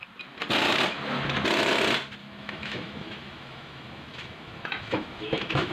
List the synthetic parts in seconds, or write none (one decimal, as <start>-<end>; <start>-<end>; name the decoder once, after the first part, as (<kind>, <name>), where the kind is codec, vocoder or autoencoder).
2.2-5.7 (autoencoder, DAC-VAE)